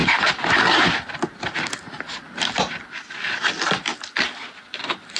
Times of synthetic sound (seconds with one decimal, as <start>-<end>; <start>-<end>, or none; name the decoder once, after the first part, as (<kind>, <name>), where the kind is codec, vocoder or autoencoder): 3.1-5.2 (vocoder, BigVGAN v2)